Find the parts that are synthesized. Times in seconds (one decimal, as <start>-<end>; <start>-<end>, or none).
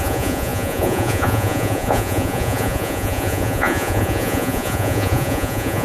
0.0-5.8